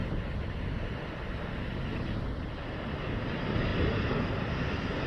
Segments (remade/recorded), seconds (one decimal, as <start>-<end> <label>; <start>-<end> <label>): 0.0-1.3 remade; 1.3-3.7 recorded; 3.7-5.1 remade